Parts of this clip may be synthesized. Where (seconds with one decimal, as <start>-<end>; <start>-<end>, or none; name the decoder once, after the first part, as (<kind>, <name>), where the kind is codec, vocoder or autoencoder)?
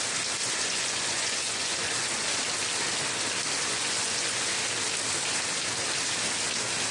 0.4-2.4 (vocoder, Vocos); 3.7-4.5